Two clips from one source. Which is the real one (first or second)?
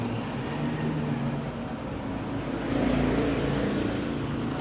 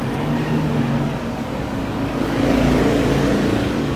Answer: first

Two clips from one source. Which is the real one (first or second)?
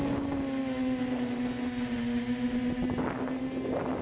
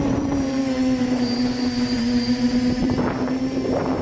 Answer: first